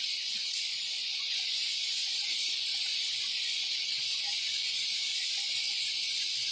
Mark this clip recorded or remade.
remade